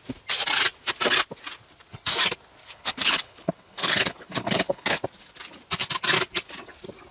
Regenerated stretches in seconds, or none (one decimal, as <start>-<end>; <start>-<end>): 2.6-5.0